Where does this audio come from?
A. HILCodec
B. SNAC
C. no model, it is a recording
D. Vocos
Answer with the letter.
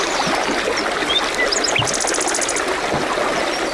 C